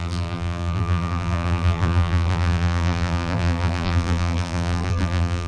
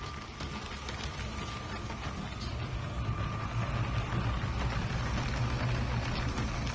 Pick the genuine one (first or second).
second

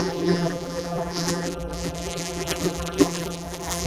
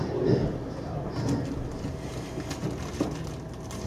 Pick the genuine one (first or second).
second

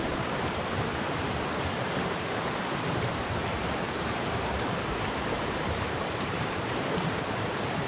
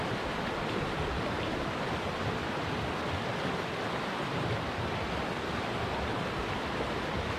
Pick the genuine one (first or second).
second